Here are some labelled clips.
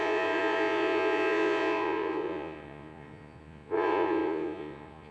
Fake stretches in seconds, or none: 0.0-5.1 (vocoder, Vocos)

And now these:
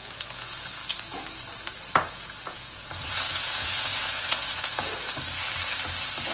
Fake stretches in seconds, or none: 0.0-0.8 (vocoder, Vocos); 2.1-5.0

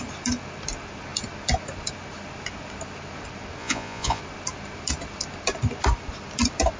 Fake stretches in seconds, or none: 3.6-4.2 (vocoder, Vocos)

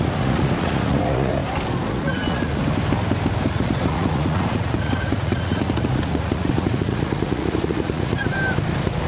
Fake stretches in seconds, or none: 0.0-1.4 (vocoder, Vocos); 1.9-2.6; 3.5-8.3

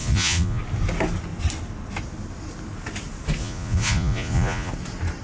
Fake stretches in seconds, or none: 0.0-0.6 (vocoder, Vocos); 3.4-4.7

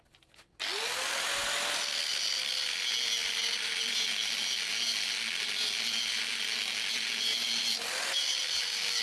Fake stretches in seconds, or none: none

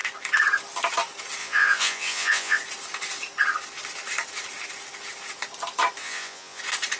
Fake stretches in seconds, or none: 1.4-2.6 (vocoder, Vocos); 6.0-6.6

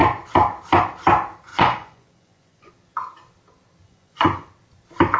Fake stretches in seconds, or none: 1.5-2.7 (vocoder, Vocos); 3.8-4.5